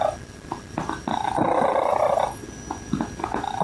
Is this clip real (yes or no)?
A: yes